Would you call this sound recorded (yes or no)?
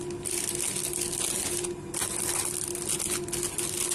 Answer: yes